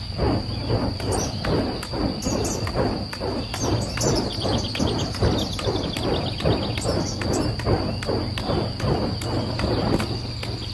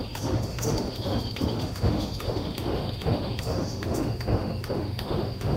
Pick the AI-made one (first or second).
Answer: second